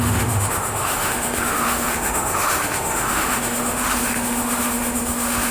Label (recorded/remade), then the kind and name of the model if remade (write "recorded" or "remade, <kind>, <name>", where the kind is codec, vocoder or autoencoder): remade, autoencoder, DAC-VAE